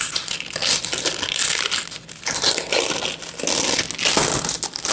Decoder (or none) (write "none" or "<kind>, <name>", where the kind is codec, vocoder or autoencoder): none